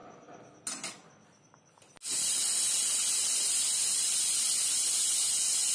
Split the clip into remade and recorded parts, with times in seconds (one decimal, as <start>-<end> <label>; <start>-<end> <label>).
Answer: 0.0-5.7 recorded

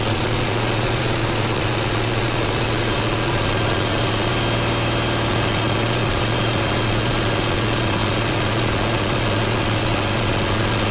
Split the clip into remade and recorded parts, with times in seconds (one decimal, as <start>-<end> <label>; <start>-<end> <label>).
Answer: 0.0-4.3 remade; 4.3-5.3 recorded; 5.3-10.9 remade

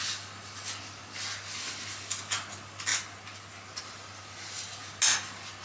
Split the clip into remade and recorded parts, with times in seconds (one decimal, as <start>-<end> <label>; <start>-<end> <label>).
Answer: 0.0-5.6 recorded

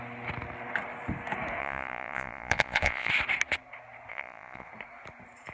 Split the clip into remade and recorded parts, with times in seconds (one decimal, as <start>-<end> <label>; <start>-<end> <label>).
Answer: 0.0-1.6 recorded; 1.6-3.1 remade; 3.1-4.1 recorded; 4.1-4.7 remade; 4.7-5.5 recorded